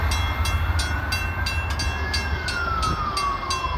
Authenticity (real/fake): real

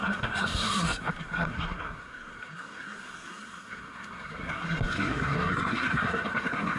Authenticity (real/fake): fake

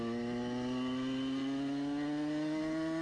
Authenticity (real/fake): real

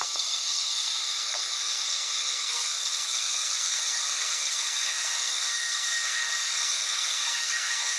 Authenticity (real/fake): fake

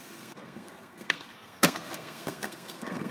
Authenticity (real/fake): fake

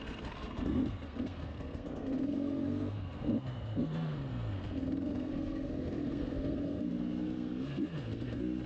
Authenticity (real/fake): fake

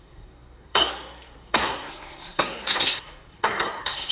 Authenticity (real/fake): fake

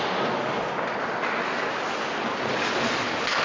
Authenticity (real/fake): real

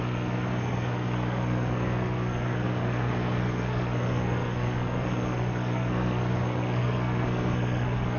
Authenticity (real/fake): fake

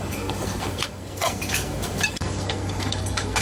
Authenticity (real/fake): fake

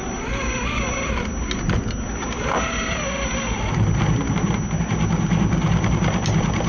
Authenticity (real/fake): real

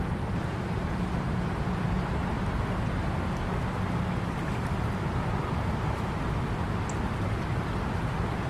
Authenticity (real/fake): real